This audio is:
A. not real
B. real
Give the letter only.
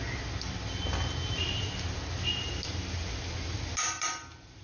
B